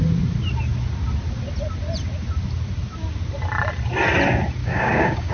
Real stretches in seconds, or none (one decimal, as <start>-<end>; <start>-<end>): 0.0-4.6